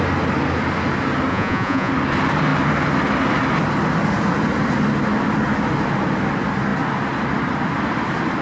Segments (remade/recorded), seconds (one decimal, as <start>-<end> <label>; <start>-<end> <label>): 0.0-1.3 recorded; 1.3-1.9 remade; 1.9-8.4 recorded